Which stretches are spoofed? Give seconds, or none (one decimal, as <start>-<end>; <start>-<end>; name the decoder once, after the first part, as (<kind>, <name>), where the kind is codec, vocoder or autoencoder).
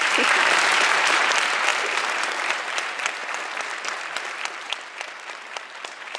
0.0-1.7 (vocoder, BigVGAN v2); 2.2-3.2; 5.3-6.2